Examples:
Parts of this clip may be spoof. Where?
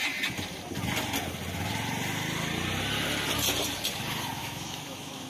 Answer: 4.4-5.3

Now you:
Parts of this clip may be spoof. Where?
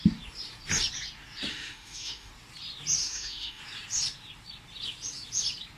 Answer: 1.5-2.3; 3.0-3.6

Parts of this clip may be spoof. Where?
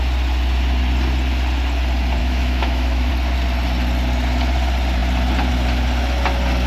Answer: 2.2-3.1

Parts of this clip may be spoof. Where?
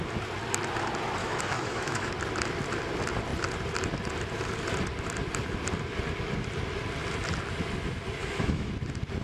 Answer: 1.2-2.1; 8.2-8.7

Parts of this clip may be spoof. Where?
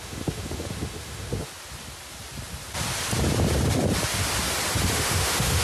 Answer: 0.0-1.5; 4.9-5.6